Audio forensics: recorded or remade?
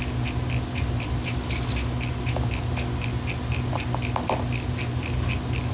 recorded